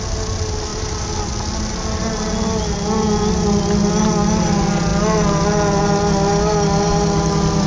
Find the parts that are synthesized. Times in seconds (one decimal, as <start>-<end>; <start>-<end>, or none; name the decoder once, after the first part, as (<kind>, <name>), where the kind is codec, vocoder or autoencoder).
0.7-1.2 (vocoder, BigVGAN v2)